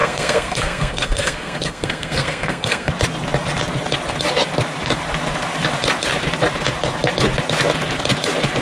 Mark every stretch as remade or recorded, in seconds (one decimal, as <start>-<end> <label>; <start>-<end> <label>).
0.0-2.9 remade; 2.9-8.6 recorded